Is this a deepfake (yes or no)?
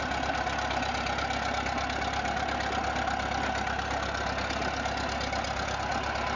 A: no